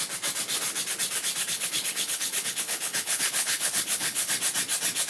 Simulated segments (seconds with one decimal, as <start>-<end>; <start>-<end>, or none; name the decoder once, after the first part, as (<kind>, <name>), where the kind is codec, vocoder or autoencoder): 1.5-4.3 (codec, HILCodec)

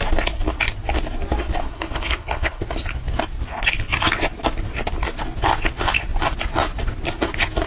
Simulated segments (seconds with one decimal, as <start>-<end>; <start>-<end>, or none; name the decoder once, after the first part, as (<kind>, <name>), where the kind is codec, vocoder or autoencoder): 1.6-2.6 (codec, HILCodec)

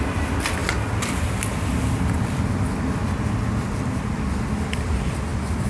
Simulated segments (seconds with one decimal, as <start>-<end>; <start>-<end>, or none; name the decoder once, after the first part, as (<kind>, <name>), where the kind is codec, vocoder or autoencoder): none

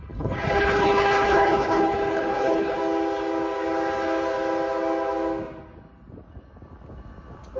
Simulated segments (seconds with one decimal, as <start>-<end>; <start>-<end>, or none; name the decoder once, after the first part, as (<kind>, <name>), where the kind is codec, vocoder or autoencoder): 0.0-2.8 (codec, HILCodec)

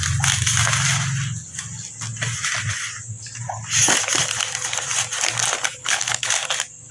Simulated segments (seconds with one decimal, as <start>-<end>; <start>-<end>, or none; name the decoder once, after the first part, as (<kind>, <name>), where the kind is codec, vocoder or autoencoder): 5.8-6.3 (codec, HILCodec)